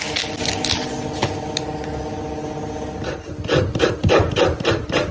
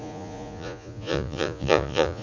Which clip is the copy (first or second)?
second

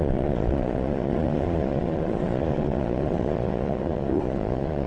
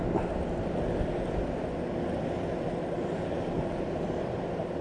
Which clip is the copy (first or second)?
first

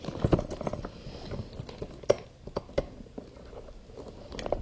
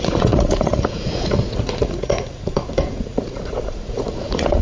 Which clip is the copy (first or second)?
second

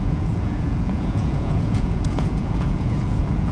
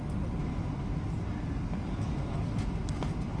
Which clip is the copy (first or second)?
first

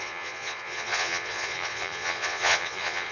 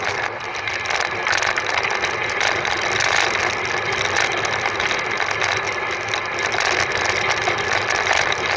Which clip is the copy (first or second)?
first